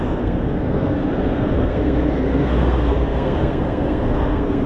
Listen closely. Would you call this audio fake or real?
fake